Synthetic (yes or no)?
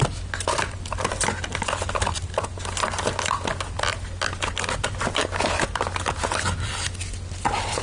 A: no